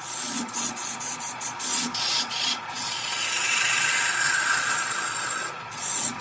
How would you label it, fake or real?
fake